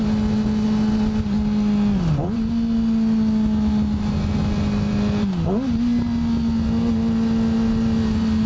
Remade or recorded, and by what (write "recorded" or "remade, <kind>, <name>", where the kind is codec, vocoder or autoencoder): recorded